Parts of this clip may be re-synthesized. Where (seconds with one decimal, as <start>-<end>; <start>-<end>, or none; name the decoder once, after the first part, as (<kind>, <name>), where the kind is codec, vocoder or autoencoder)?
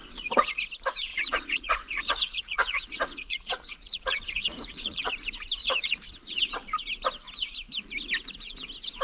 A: 0.0-0.6 (vocoder, Vocos); 1.1-5.1; 5.6-6.4